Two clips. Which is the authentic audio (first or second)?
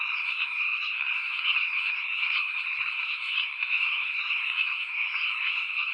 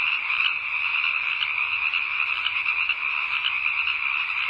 second